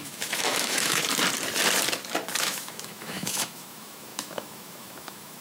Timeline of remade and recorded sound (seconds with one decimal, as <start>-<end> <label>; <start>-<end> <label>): 0.0-1.0 remade; 1.0-2.4 recorded; 2.4-5.4 remade